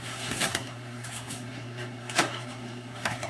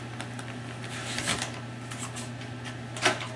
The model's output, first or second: first